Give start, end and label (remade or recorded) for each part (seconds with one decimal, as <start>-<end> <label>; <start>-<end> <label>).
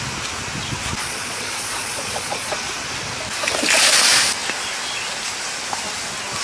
0.0-1.0 recorded; 1.0-2.5 remade; 2.5-6.4 recorded